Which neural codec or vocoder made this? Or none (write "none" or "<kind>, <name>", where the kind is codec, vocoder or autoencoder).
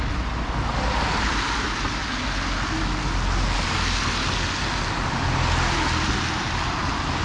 none